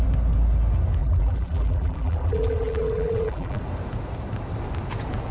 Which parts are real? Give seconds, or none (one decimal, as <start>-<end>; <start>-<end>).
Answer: 0.0-1.0; 3.6-5.3